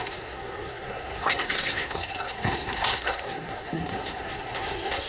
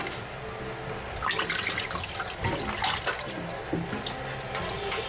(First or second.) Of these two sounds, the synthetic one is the first